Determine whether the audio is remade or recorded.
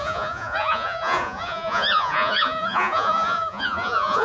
remade